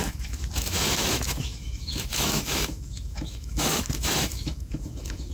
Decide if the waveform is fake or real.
fake